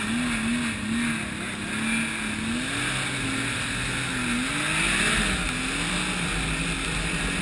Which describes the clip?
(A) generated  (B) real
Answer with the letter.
B